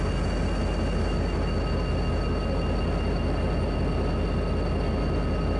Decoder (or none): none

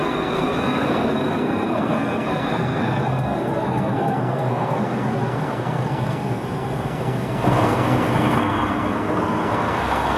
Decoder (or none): codec, SNAC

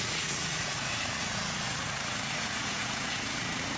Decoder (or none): vocoder, Vocos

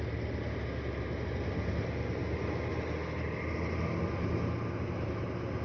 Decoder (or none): none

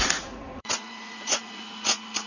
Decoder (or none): vocoder, Vocos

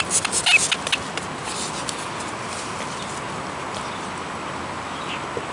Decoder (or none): none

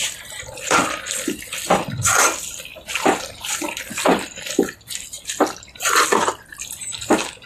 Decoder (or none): vocoder, BigVGAN v2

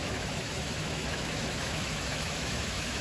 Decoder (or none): autoencoder, DAC-VAE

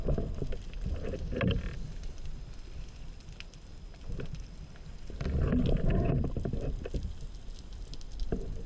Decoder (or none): none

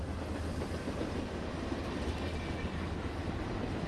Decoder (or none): none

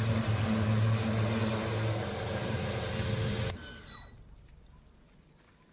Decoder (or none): none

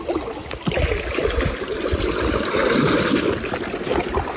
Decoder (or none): none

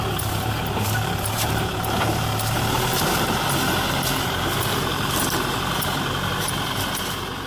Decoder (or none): vocoder, BigVGAN v2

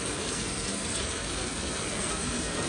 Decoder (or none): codec, SNAC